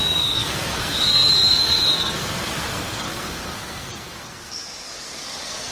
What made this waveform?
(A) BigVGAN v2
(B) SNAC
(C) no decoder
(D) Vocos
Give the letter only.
B